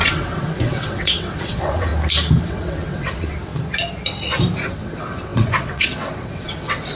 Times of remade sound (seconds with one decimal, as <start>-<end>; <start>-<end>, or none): 0.0-1.9; 2.4-3.5; 4.7-7.0